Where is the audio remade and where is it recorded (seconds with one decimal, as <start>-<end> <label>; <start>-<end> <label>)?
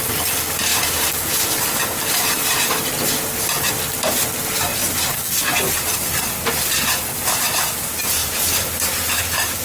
0.0-0.7 recorded; 0.7-2.1 remade; 2.1-8.2 recorded; 8.2-9.1 remade; 9.1-9.6 recorded